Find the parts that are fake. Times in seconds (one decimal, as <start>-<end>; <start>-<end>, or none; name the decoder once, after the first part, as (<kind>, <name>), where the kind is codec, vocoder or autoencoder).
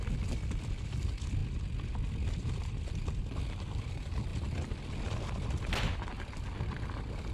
none